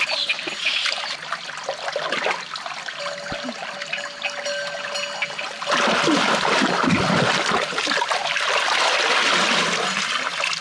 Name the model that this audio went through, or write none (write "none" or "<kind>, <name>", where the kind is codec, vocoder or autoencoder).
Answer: none